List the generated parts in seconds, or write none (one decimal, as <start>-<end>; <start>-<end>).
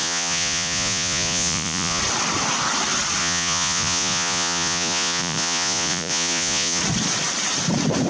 0.0-2.0; 3.2-6.8